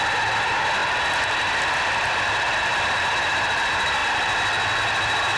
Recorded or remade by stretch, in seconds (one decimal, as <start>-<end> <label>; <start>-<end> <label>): 0.0-0.8 remade; 0.8-1.5 recorded; 1.5-4.0 remade; 4.0-4.8 recorded; 4.8-5.4 remade